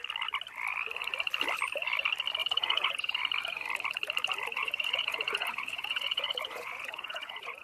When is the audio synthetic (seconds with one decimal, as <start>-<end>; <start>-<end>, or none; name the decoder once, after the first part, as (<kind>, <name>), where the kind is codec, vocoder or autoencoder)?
2.4-3.2 (vocoder, Vocos); 4.6-7.6